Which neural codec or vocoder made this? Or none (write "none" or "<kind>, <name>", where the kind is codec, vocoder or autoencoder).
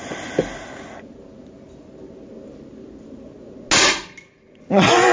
none